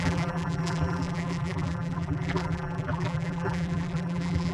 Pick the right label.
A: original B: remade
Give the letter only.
B